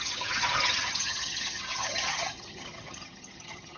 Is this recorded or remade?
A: remade